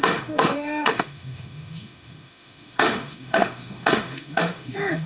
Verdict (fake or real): fake